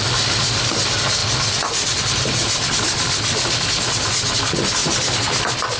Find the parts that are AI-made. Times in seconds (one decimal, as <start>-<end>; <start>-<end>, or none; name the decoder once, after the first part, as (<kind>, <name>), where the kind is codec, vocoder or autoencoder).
none